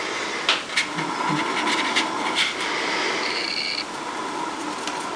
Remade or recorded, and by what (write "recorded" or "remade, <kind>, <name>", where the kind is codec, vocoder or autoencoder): recorded